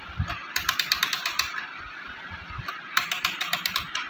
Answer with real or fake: real